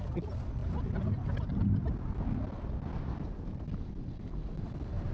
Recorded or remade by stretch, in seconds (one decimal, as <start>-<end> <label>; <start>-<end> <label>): 0.0-5.1 recorded